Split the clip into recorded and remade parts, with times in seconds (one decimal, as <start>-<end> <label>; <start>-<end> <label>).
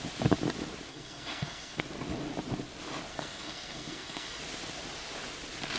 0.0-0.9 recorded; 0.9-1.8 remade; 1.8-3.1 recorded; 3.1-4.4 remade; 4.4-5.8 recorded